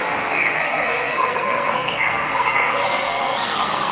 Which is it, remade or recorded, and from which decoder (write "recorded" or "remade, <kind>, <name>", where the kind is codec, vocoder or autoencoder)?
remade, codec, SNAC